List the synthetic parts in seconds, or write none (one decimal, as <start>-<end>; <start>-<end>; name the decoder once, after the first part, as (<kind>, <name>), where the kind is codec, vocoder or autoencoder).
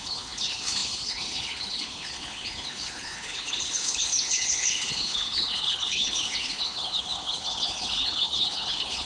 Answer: 0.0-9.1 (codec, HILCodec)